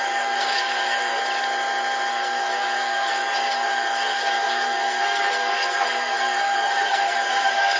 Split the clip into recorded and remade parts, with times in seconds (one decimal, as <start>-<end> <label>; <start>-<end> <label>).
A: 0.0-1.2 remade; 1.2-2.1 recorded; 2.1-7.8 remade